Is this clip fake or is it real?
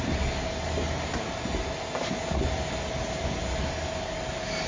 real